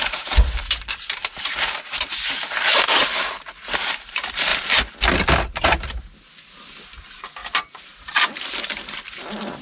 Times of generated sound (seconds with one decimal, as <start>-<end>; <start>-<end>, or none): 0.0-1.2; 3.7-4.5; 7.0-9.6